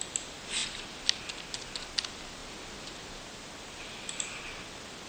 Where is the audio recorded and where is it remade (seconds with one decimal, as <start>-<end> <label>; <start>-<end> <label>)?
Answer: 0.0-5.1 recorded